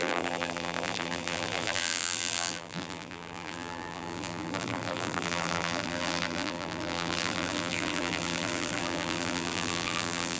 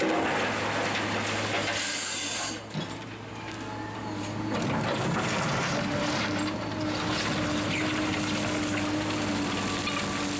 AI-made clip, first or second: first